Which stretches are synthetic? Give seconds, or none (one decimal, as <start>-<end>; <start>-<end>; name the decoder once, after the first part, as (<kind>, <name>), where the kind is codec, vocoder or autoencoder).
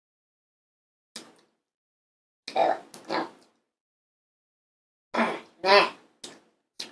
none